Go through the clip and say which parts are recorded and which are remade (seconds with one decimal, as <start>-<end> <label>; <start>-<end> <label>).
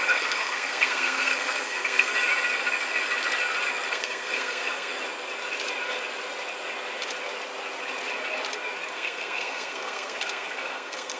0.0-2.1 remade; 2.1-3.9 recorded; 3.9-4.9 remade; 4.9-8.9 recorded; 8.9-11.2 remade